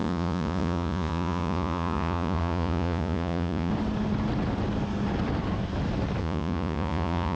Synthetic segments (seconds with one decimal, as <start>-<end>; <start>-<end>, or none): 0.0-3.7; 6.2-7.3